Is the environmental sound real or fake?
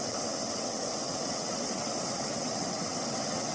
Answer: fake